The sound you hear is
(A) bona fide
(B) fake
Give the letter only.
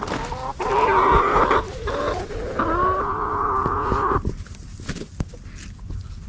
A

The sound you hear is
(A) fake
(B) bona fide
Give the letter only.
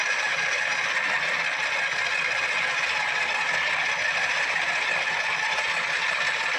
B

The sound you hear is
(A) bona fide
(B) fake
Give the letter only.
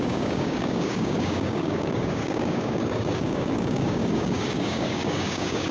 B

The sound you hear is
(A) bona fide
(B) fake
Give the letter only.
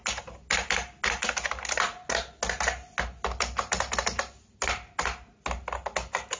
A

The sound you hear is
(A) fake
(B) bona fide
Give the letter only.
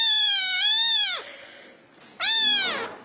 B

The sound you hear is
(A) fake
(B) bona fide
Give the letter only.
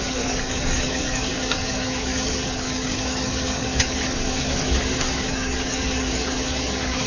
A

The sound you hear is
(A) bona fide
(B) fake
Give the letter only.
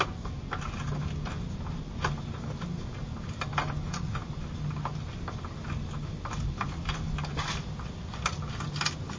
A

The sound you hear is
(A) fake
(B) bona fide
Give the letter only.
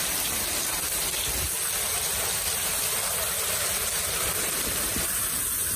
B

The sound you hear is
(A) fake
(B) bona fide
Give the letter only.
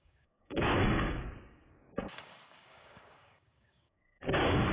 A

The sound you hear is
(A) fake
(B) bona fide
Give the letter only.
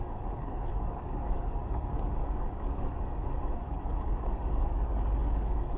A